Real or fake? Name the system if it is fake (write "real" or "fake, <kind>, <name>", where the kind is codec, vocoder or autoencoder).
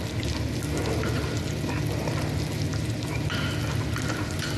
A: real